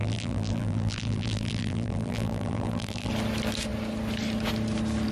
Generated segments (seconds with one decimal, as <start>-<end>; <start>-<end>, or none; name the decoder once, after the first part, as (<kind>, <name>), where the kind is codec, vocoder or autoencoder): 0.0-3.1 (vocoder, BigVGAN v2)